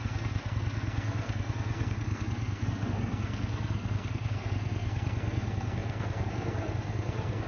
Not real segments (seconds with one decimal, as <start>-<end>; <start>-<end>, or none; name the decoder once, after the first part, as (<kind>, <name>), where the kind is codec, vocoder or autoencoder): 0.0-7.5 (codec, SNAC)